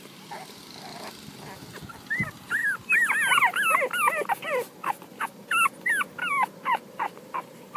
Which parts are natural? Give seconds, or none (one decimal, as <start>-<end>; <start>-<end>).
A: 0.9-2.1; 2.6-6.7